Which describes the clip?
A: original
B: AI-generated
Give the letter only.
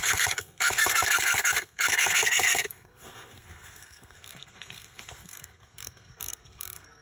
B